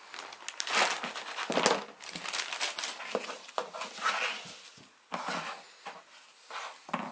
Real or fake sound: real